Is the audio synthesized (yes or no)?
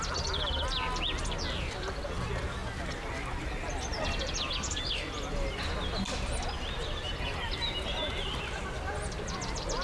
no